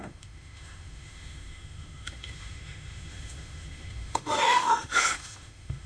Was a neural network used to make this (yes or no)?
yes